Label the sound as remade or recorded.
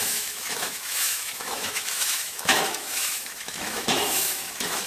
remade